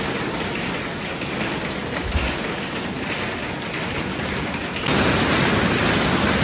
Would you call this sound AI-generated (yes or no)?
no